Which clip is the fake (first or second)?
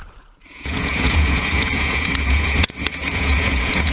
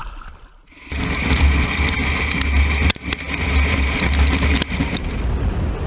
first